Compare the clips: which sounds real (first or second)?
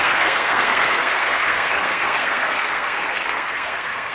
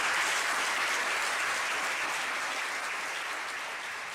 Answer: second